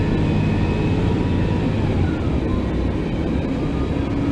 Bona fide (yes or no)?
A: yes